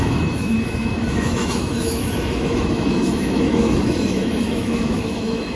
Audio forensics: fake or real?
fake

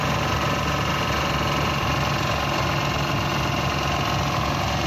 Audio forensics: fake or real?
real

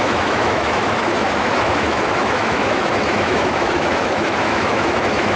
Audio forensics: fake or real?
fake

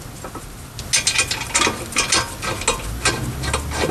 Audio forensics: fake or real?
real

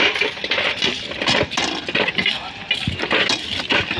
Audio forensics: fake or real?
real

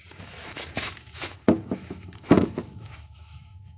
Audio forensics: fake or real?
fake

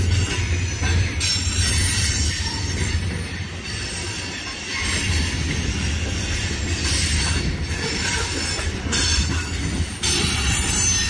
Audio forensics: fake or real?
real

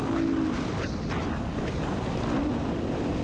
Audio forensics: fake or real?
real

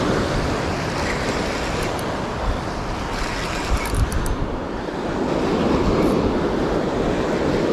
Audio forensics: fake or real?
real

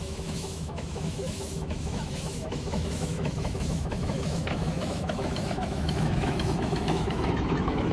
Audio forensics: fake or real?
fake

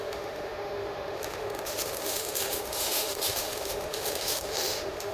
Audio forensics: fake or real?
fake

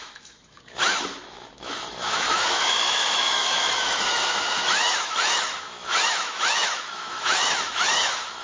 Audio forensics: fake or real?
fake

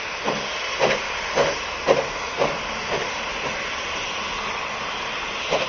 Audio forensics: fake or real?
real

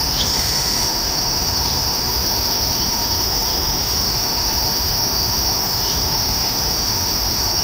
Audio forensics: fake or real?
fake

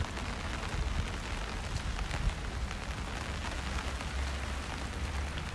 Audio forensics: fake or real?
real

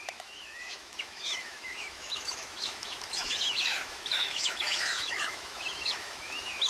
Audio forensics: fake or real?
fake